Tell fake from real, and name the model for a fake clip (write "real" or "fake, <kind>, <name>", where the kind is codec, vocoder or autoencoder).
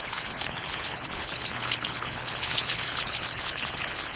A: fake, codec, HILCodec